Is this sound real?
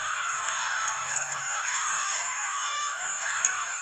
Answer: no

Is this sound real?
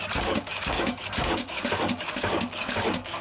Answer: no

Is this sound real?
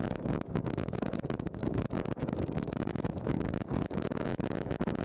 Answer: no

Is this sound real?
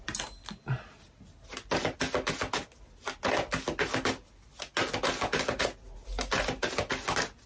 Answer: yes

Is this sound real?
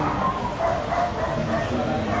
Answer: yes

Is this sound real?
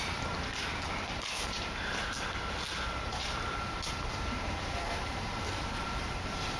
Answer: yes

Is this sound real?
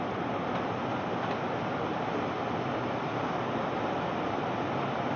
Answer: yes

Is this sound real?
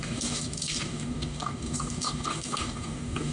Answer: no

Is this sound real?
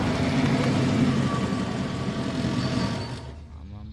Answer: yes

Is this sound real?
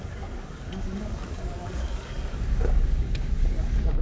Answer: no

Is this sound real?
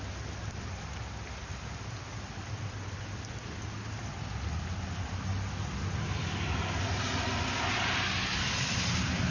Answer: yes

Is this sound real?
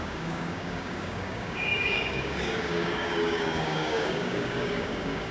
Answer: no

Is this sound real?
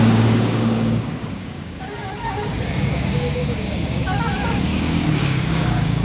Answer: no